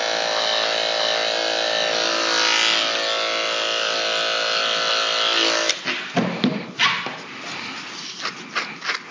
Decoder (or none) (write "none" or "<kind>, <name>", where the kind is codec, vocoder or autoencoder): none